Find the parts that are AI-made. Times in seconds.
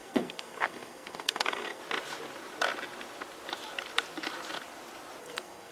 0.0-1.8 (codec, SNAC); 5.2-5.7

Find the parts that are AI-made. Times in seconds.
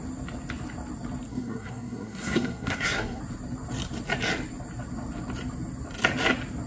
1.3-3.2 (codec, SNAC)